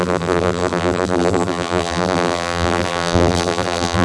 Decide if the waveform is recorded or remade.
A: remade